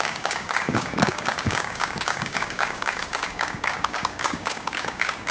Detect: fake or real fake